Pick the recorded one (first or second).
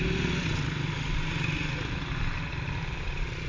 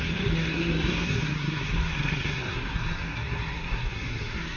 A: first